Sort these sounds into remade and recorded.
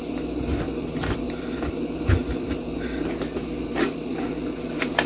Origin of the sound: recorded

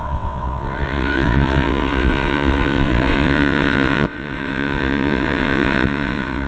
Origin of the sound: remade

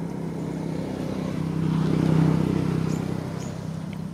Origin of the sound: recorded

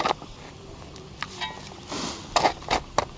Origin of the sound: recorded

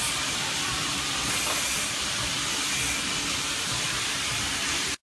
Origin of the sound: remade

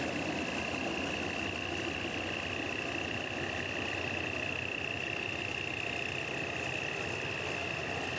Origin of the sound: recorded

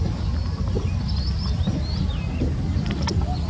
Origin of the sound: recorded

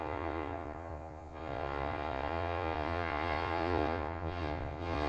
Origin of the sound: remade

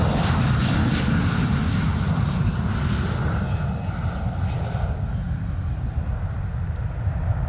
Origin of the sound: recorded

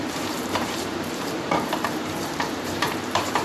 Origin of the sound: remade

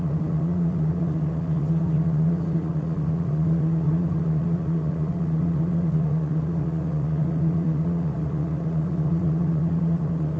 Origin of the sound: remade